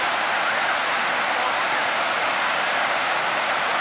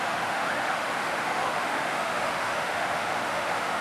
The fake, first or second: second